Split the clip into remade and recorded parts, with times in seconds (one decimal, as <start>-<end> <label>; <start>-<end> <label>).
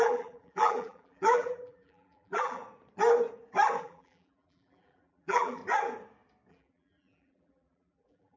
0.0-2.6 remade; 2.6-3.8 recorded; 3.8-5.6 remade; 5.6-6.5 recorded; 6.5-8.4 remade